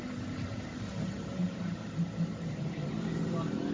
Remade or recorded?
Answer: remade